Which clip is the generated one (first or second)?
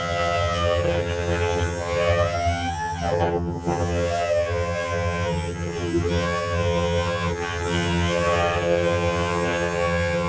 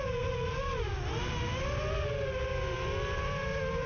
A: first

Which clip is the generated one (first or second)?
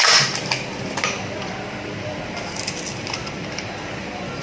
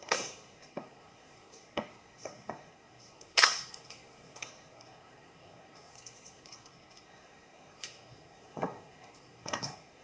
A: second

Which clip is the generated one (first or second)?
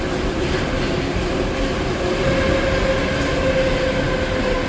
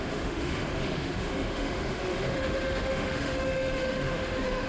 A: second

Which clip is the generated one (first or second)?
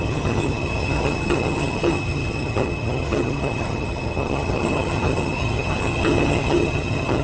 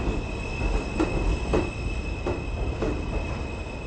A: first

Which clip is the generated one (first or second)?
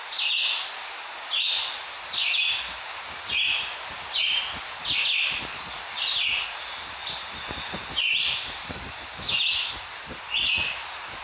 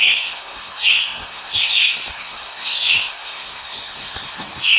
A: second